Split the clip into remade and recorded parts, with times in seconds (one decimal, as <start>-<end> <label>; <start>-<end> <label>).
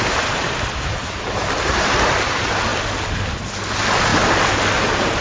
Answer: 0.0-1.0 recorded; 1.0-2.1 remade; 2.1-5.2 recorded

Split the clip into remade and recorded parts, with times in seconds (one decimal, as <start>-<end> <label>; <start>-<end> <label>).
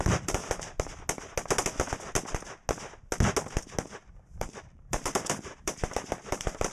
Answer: 0.0-0.4 remade; 0.4-4.4 recorded; 4.4-6.7 remade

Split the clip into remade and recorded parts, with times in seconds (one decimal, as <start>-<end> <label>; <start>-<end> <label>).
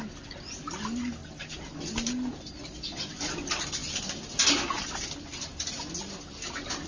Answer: 0.0-6.9 recorded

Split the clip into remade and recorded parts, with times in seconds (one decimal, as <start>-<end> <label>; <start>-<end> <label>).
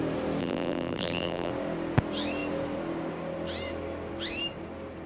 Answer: 0.0-0.4 recorded; 0.4-1.5 remade; 1.5-5.1 recorded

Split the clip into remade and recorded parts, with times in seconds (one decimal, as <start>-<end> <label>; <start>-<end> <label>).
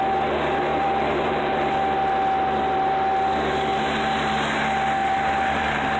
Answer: 0.0-0.7 recorded; 0.7-1.7 remade; 1.7-5.0 recorded; 5.0-6.0 remade